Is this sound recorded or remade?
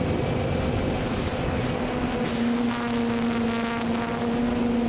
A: recorded